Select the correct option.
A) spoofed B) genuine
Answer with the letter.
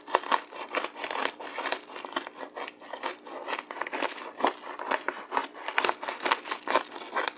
B